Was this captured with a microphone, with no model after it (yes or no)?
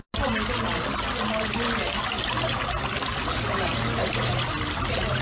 yes